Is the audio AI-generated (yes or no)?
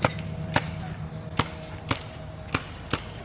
no